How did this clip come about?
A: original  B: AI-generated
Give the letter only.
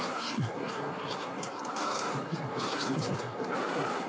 B